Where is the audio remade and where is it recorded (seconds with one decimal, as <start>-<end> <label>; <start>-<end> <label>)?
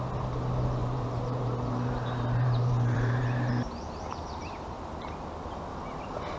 0.0-0.8 recorded; 0.8-4.6 remade; 4.6-6.4 recorded